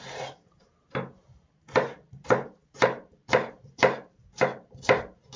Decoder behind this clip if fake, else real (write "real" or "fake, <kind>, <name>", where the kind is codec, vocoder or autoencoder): fake, vocoder, BigVGAN v2